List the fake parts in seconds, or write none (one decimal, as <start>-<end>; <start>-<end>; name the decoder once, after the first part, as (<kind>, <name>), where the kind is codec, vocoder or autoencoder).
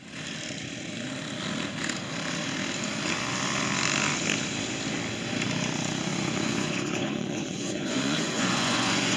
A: 6.1-9.2 (vocoder, Vocos)